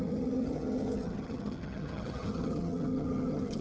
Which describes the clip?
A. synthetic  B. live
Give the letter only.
A